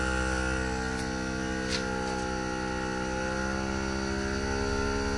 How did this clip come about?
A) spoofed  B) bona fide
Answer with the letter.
B